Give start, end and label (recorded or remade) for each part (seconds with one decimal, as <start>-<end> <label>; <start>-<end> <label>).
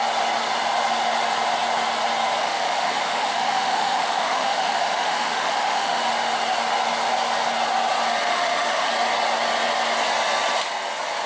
0.0-2.4 recorded; 2.4-6.0 remade; 6.0-8.3 recorded; 8.3-8.9 remade; 8.9-11.3 recorded